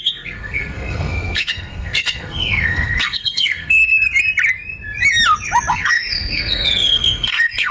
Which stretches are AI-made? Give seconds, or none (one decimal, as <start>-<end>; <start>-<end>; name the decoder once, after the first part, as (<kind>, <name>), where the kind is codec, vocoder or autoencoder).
0.0-3.9 (codec, SNAC); 5.7-7.7